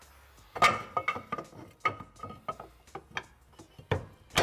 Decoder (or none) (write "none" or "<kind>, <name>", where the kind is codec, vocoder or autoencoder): none